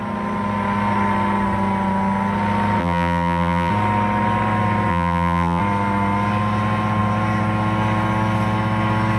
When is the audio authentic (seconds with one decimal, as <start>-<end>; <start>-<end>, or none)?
0.0-2.8; 3.7-4.9; 5.6-9.2